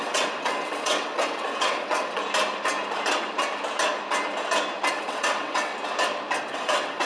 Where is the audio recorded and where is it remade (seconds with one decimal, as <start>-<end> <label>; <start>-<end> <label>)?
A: 0.0-2.2 remade; 2.2-4.9 recorded; 4.9-5.7 remade; 5.7-6.4 recorded; 6.4-7.1 remade